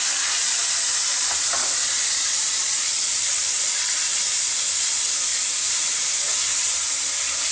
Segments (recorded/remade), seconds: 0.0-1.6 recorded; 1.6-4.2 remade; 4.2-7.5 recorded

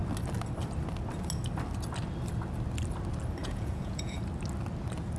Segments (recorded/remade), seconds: 0.0-3.4 recorded; 3.4-4.2 remade; 4.2-5.2 recorded

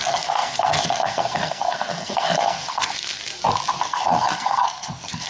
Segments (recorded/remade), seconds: 0.0-3.2 remade; 3.2-3.8 recorded; 3.8-5.3 remade

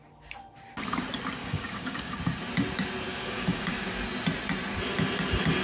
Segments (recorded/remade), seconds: 0.0-1.4 recorded; 1.4-2.2 remade; 2.2-3.1 recorded; 3.1-3.9 remade; 3.9-5.6 recorded